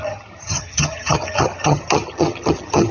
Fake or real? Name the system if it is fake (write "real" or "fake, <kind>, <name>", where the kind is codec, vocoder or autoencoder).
fake, vocoder, HiFi-GAN